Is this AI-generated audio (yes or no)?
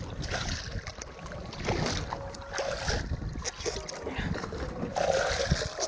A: no